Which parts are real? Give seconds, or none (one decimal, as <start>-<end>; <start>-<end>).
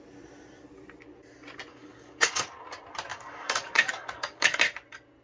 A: 0.0-1.7; 2.4-3.1; 4.6-5.2